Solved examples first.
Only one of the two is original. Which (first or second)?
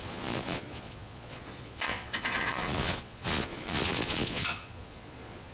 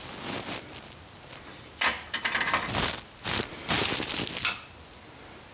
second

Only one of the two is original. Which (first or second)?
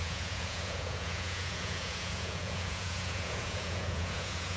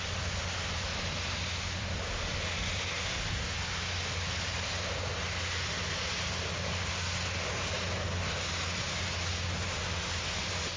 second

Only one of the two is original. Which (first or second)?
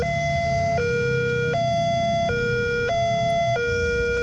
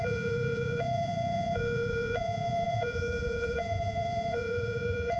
first